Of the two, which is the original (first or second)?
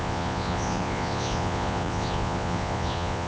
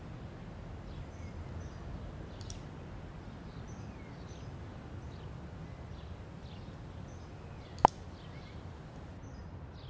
second